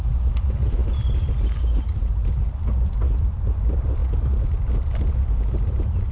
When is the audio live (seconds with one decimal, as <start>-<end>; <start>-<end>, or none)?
0.8-1.8; 4.0-5.1